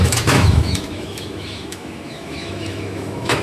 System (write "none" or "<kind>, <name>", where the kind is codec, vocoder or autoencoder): autoencoder, DAC-VAE